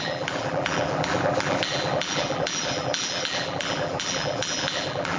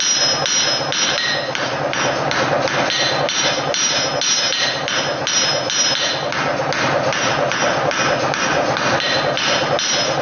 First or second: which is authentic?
second